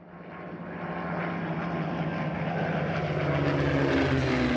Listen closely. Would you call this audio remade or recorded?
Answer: recorded